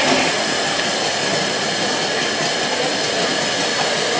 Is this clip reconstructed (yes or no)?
no